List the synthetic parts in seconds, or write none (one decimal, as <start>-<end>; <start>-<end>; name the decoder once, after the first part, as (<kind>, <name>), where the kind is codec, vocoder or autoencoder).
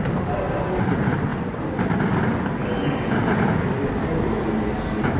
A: none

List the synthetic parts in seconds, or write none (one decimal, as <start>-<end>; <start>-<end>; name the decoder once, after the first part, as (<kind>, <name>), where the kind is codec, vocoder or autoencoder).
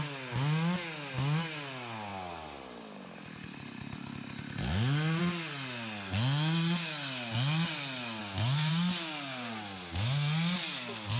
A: none